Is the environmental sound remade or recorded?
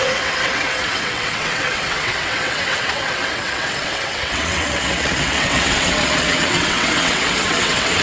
remade